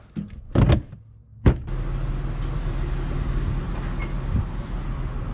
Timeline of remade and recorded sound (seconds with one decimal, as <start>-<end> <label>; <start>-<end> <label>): 0.0-5.3 recorded

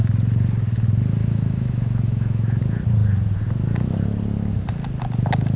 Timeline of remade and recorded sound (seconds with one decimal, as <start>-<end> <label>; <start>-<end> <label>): 0.0-1.2 recorded; 1.2-2.6 remade; 2.6-5.6 recorded